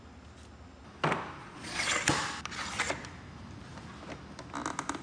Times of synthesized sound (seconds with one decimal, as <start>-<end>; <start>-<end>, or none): 1.4-1.9